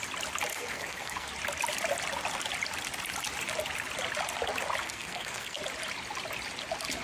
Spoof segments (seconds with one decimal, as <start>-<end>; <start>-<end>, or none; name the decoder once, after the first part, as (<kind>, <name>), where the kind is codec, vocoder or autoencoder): 0.5-1.3 (codec, SNAC); 4.8-5.6